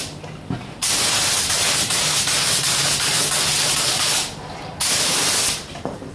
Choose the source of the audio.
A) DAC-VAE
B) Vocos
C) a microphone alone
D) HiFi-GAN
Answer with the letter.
C